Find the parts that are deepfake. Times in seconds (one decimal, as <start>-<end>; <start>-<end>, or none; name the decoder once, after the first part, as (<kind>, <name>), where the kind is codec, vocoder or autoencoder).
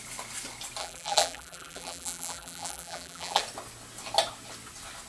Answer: 0.8-3.4 (vocoder, BigVGAN v2)